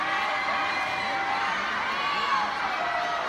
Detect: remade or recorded recorded